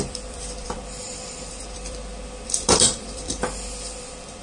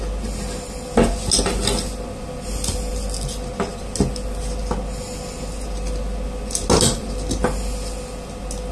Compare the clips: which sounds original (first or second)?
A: second